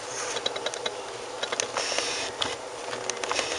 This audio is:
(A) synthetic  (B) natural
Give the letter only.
B